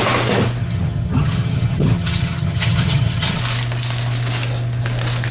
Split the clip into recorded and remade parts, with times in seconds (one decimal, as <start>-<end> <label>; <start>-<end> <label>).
0.0-0.6 recorded; 0.6-3.4 remade; 3.4-5.3 recorded